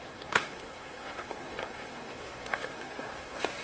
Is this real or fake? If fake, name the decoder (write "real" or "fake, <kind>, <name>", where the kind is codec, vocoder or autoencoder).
fake, codec, SNAC